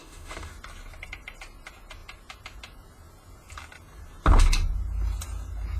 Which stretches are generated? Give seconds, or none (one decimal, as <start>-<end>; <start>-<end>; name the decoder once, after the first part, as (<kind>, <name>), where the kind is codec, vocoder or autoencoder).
0.0-0.5 (autoencoder, DAC-VAE)